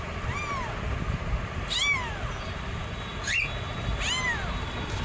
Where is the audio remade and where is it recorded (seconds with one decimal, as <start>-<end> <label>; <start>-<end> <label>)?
0.0-5.0 recorded